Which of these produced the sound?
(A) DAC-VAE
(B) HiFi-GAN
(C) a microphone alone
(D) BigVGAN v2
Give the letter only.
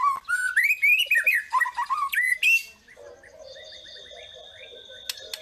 C